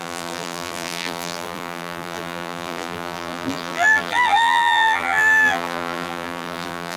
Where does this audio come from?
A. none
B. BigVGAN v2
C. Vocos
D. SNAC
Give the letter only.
B